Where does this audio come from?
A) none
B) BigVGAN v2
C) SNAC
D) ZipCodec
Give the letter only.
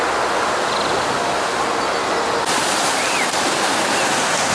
A